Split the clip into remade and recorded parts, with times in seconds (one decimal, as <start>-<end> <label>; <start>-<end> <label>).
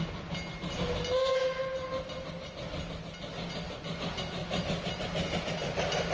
0.0-6.1 recorded